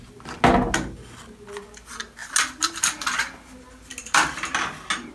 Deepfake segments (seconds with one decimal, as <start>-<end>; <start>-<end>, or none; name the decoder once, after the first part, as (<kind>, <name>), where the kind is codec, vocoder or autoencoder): none